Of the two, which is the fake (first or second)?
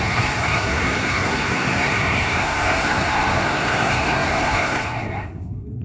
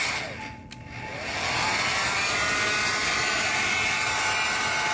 first